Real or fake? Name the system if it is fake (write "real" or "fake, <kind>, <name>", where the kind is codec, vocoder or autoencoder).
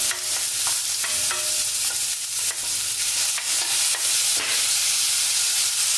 fake, vocoder, BigVGAN v2